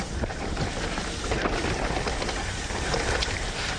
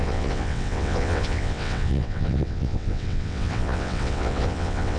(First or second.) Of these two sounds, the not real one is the second